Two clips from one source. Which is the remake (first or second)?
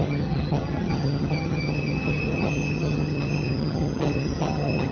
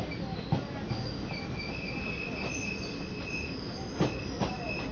first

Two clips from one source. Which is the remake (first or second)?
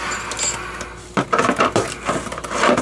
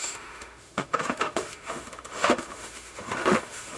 second